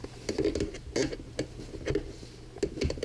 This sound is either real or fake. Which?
real